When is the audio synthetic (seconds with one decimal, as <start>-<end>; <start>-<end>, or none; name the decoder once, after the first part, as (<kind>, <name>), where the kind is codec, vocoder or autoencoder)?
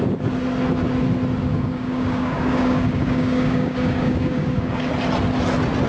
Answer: 1.5-4.9 (codec, DAC)